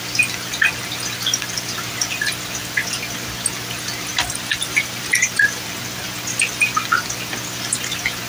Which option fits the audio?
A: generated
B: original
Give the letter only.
B